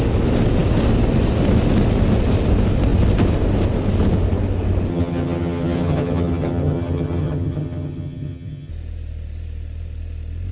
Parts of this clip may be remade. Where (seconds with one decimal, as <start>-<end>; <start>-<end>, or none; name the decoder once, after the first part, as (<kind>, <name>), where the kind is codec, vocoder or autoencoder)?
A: 4.9-8.7 (vocoder, HiFi-GAN)